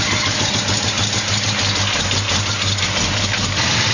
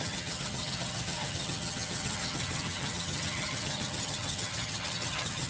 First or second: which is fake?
second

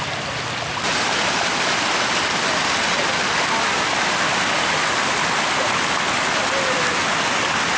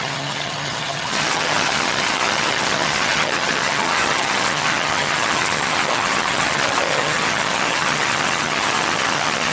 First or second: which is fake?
second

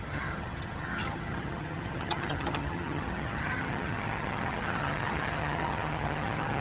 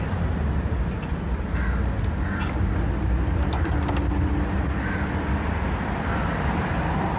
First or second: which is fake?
first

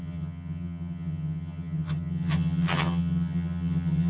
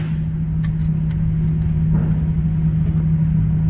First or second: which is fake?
first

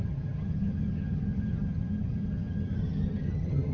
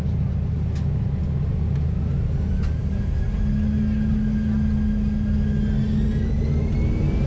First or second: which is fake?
first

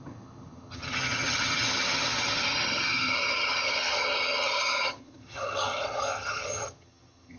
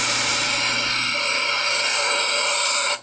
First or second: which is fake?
first